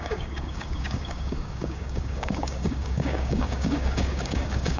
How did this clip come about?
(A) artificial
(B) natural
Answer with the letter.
A